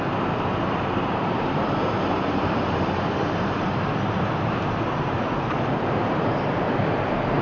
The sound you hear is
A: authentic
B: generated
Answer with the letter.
B